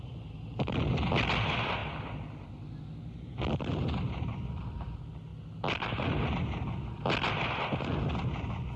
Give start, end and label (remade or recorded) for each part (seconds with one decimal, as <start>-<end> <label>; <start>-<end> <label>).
0.0-8.8 recorded